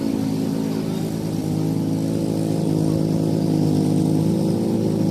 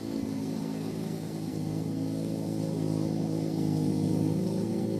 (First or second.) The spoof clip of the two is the second